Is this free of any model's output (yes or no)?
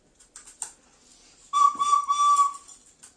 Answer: yes